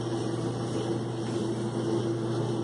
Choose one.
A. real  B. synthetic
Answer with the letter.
A